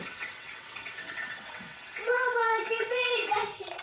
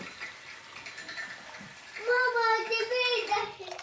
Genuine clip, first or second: second